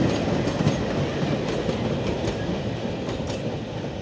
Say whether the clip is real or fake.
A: real